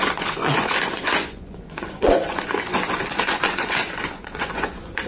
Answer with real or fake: fake